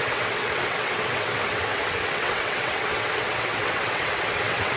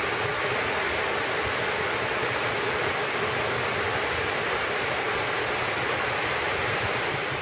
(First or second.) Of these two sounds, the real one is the second